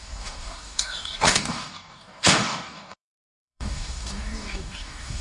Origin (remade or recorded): remade